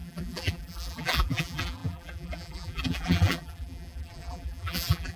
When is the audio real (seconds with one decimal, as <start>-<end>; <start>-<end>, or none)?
none